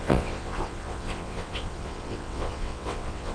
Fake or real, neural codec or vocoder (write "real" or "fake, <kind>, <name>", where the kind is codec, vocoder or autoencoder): fake, vocoder, WaveNeXt